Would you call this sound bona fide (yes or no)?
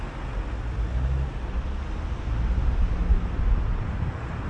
yes